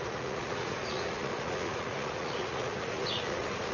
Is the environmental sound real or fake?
fake